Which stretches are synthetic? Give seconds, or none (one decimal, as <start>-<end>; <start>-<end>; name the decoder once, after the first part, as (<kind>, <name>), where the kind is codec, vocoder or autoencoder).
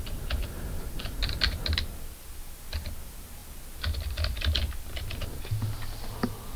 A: 0.4-1.3 (vocoder, BigVGAN v2)